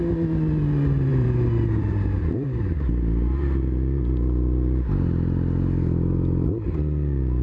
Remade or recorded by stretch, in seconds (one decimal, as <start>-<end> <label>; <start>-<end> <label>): 0.0-1.1 recorded; 1.1-2.6 remade; 2.6-7.4 recorded